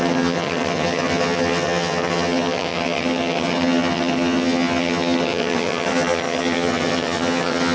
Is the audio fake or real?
fake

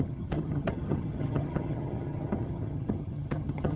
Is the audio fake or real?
fake